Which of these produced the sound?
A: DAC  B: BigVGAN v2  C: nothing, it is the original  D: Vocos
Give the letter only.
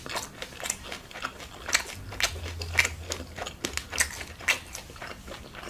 C